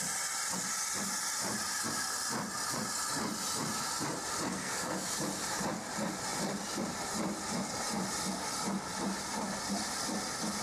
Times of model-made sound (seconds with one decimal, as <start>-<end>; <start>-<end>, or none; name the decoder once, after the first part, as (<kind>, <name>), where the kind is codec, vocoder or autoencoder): 4.5-5.1 (codec, SNAC)